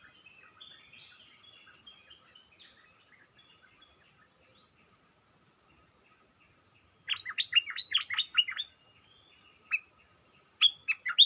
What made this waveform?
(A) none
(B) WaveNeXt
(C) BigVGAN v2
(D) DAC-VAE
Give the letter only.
A